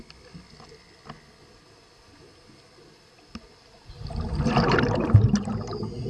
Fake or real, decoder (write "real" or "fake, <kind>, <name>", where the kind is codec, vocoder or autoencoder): real